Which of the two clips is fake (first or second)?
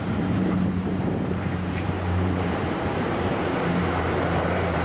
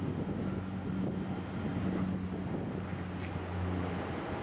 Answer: first